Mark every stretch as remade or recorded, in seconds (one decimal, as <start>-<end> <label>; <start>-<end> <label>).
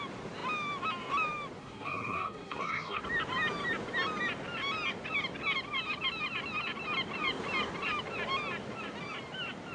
0.0-1.6 recorded; 1.6-3.0 remade; 3.0-9.7 recorded